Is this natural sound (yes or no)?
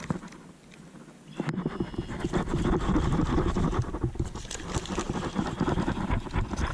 yes